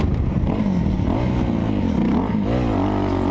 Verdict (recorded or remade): recorded